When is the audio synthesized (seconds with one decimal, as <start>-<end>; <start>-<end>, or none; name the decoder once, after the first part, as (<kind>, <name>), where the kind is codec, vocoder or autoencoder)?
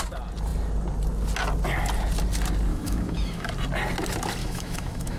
2.7-3.5 (autoencoder, DAC-VAE); 4.4-5.2